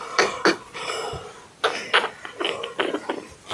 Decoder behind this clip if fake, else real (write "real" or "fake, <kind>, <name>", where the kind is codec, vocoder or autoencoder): real